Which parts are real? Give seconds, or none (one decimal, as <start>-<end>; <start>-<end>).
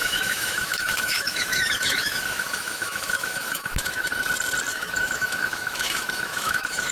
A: 4.1-4.7